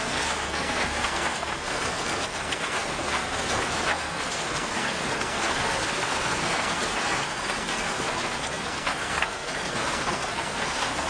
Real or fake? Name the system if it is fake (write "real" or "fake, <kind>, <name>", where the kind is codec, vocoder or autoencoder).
fake, codec, SNAC